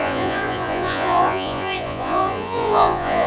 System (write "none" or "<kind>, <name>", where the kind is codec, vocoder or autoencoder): vocoder, Vocos